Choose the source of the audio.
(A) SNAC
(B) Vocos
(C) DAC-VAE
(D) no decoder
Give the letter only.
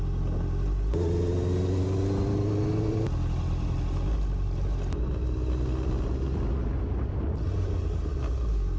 D